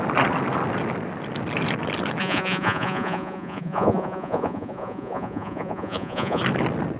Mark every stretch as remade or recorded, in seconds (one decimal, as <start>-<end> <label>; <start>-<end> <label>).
0.0-2.2 recorded; 2.2-6.4 remade; 6.4-7.0 recorded